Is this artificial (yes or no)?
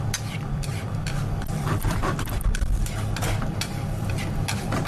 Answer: yes